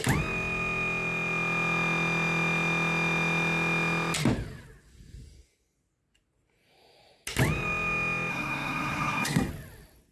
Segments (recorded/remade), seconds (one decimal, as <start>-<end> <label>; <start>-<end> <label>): 0.0-8.3 recorded; 8.3-9.5 remade; 9.5-10.1 recorded